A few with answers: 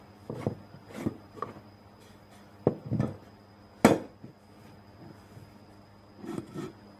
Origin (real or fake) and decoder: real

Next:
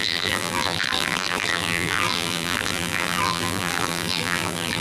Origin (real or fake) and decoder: fake, vocoder, BigVGAN v2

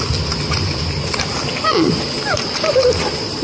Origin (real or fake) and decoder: real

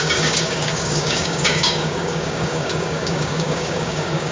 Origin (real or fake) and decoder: fake, codec, DAC